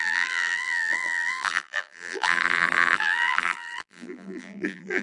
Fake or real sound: fake